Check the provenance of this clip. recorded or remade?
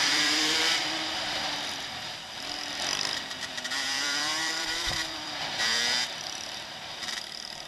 remade